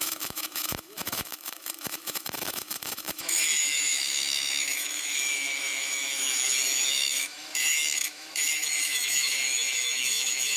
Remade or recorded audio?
remade